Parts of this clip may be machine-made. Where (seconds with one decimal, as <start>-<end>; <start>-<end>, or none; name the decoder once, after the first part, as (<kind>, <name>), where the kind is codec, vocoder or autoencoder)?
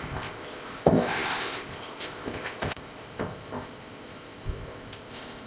0.0-5.5 (codec, ZipCodec)